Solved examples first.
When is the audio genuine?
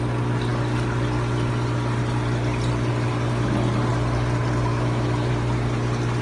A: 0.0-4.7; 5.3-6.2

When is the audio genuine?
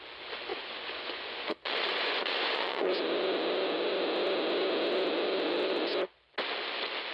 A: 0.0-0.5; 2.9-7.1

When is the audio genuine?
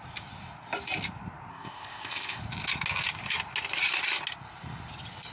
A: 0.0-1.5; 2.4-5.3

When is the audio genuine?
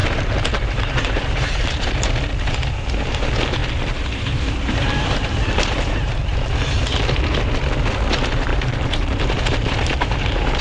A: 2.1-3.6; 7.5-8.5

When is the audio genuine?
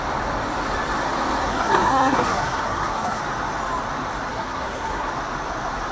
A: 0.0-1.4; 3.2-4.3; 5.1-5.9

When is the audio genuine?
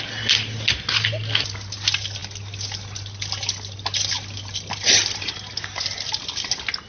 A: 0.0-6.9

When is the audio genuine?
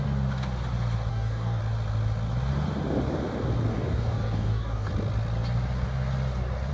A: 0.0-1.1; 1.6-3.7; 4.9-6.7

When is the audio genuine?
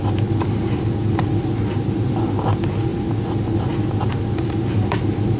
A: 0.0-5.4